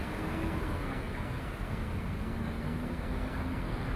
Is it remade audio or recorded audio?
remade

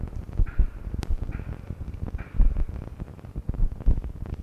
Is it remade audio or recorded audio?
recorded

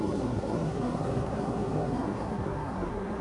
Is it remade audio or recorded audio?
remade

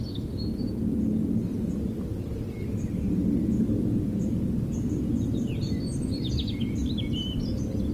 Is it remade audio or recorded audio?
recorded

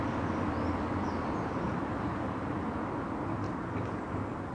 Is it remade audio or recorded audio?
recorded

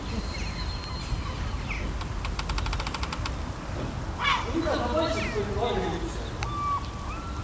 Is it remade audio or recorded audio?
recorded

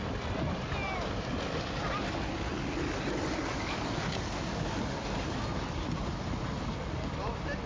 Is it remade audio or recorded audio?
recorded